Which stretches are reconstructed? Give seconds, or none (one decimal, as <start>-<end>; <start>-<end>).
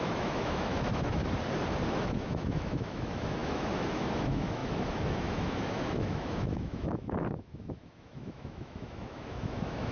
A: 0.0-1.2; 1.9-9.9